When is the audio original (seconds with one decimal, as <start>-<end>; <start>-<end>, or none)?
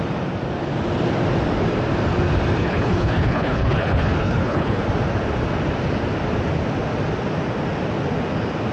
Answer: 0.0-2.6; 4.8-8.7